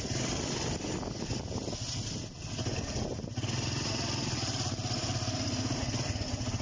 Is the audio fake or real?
real